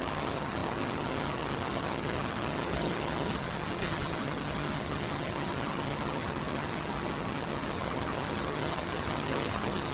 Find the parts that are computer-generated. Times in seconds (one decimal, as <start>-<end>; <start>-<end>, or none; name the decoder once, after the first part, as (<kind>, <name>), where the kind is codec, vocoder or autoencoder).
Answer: 0.0-9.9 (vocoder, HiFi-GAN)